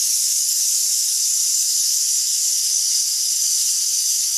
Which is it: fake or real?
fake